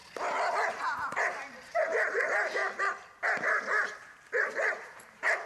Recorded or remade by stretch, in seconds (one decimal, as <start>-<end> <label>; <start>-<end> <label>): 0.0-0.8 recorded; 0.8-2.6 remade; 2.6-4.4 recorded; 4.4-5.5 remade